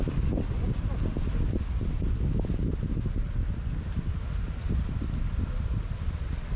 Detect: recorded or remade recorded